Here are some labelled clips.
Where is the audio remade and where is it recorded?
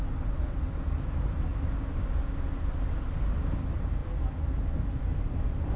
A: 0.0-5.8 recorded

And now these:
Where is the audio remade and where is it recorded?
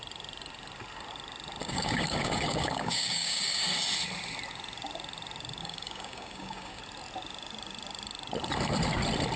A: 0.0-1.6 recorded; 1.6-3.8 remade; 3.8-5.6 recorded; 5.6-6.8 remade; 6.8-9.4 recorded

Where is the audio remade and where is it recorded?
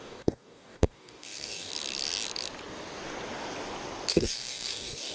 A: 0.0-1.7 remade; 1.7-4.1 recorded; 4.1-5.1 remade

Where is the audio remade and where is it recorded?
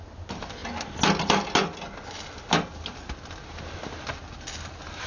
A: 0.0-5.1 recorded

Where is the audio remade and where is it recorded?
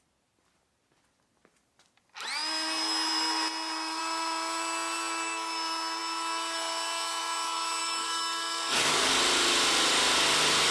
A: 0.0-7.8 recorded; 7.8-9.1 remade; 9.1-10.7 recorded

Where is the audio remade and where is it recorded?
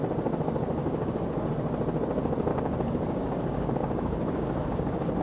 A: 0.0-0.8 recorded; 0.8-1.5 remade; 1.5-2.5 recorded; 2.5-5.2 remade